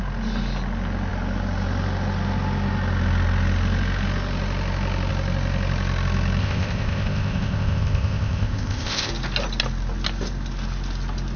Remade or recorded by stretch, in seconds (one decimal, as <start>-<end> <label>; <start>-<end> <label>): 0.0-6.4 recorded; 6.4-9.1 remade; 9.1-11.4 recorded